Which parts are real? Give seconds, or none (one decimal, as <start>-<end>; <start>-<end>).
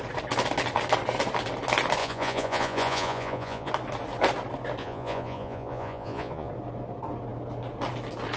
0.0-2.0; 3.7-4.8; 6.5-8.4